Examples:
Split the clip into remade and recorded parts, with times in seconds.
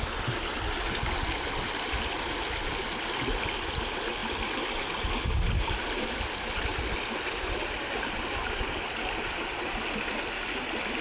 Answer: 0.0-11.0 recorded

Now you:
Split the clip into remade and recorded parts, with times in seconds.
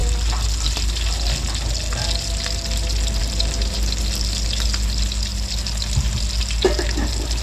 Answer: 0.0-7.4 recorded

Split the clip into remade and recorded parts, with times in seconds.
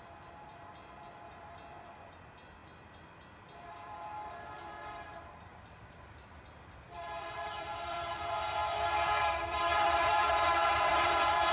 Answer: 0.0-8.6 remade; 8.6-9.2 recorded; 9.2-11.5 remade